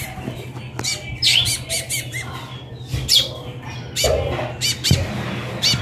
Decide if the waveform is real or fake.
real